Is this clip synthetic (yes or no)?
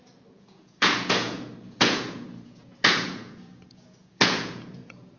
yes